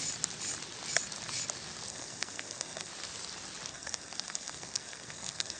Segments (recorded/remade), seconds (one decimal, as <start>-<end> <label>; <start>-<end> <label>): 0.0-1.9 recorded; 1.9-2.9 remade; 2.9-3.7 recorded; 3.7-5.6 remade